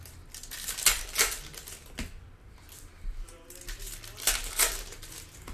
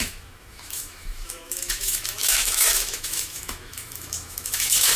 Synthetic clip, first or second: second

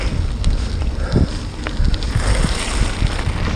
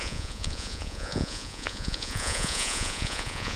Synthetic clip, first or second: second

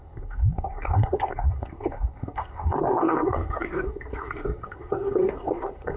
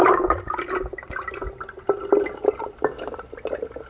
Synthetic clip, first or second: first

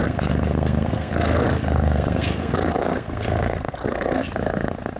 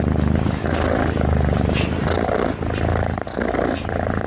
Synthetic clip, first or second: first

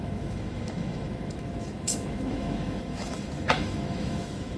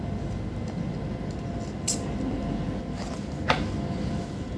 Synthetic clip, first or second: first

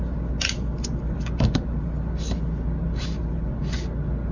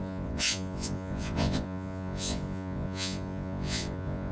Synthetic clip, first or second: second